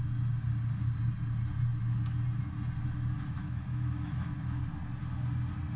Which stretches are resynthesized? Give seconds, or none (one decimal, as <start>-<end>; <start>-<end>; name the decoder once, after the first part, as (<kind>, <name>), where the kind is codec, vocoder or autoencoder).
3.4-4.6 (autoencoder, DAC-VAE)